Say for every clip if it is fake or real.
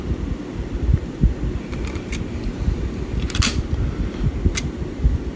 real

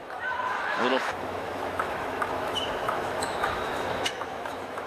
fake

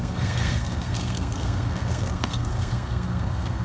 fake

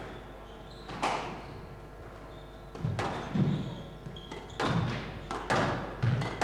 real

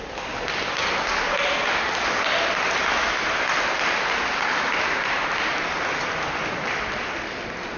real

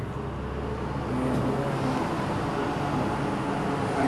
real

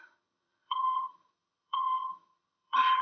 fake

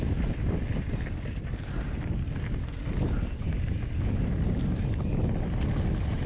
real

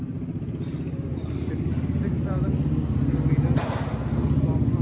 real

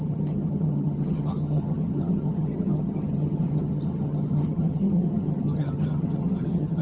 fake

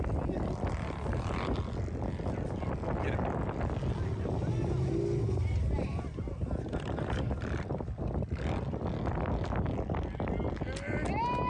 real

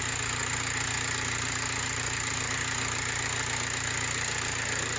real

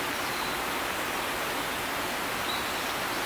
real